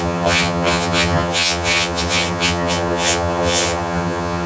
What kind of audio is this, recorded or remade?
remade